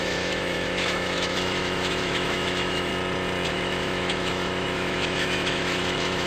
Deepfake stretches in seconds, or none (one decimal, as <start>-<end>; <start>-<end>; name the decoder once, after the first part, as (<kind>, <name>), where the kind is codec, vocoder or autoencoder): 0.0-2.9 (autoencoder, DAC-VAE); 3.5-6.3